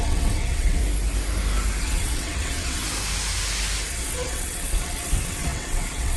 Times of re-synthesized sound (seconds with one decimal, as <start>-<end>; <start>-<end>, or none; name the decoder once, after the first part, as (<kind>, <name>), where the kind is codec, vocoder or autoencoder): 0.0-0.8 (vocoder, WaveNeXt); 1.8-2.8; 3.9-6.2